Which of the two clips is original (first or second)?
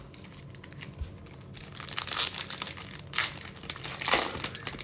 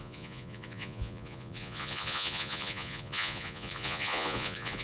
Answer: first